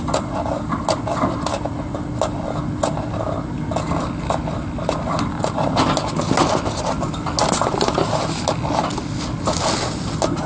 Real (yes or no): yes